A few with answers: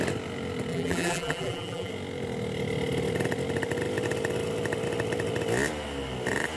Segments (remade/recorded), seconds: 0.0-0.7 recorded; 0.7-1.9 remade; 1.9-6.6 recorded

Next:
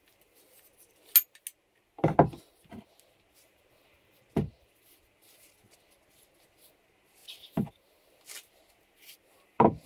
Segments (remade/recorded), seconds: 0.0-9.9 recorded

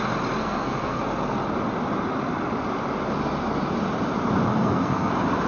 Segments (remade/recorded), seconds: 0.0-0.4 recorded; 0.4-1.0 remade; 1.0-4.5 recorded; 4.5-5.1 remade; 5.1-5.5 recorded

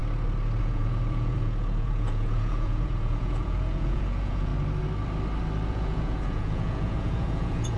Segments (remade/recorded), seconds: 0.0-0.6 recorded; 0.6-4.5 remade; 4.5-5.7 recorded; 5.7-7.8 remade

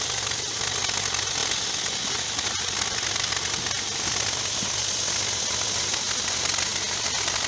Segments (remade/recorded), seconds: 0.0-7.5 recorded

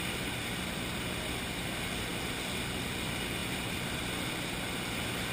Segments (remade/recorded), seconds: 0.0-2.1 remade; 2.1-2.8 recorded; 2.8-5.3 remade